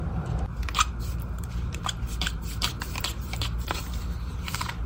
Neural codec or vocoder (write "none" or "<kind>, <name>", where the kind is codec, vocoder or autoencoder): vocoder, BigVGAN v2